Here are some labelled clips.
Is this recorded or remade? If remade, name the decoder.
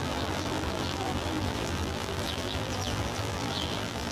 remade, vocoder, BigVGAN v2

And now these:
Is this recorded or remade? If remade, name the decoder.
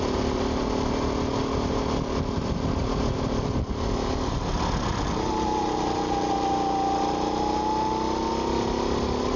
recorded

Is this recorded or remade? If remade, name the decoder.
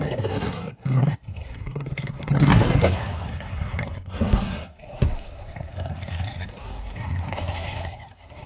remade, codec, SNAC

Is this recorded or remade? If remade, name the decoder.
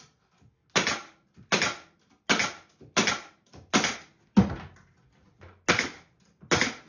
recorded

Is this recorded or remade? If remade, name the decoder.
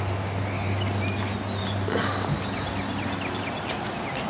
recorded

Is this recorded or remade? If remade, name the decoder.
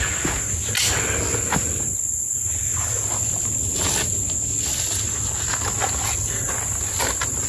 recorded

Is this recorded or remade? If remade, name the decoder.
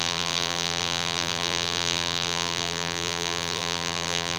remade, vocoder, BigVGAN v2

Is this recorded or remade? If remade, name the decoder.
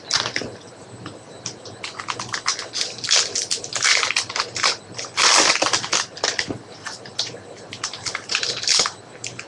recorded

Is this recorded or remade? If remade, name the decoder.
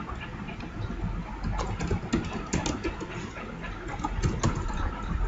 recorded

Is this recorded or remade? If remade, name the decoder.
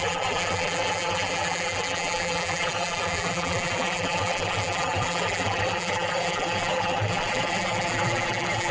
remade, vocoder, BigVGAN v2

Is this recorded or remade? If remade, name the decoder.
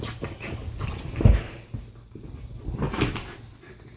recorded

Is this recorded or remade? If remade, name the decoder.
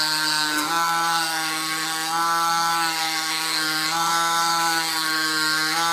remade, codec, SNAC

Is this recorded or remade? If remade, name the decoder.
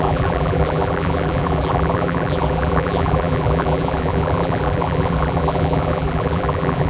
remade, vocoder, BigVGAN v2